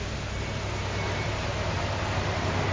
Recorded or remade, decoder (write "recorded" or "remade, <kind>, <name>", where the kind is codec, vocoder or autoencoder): recorded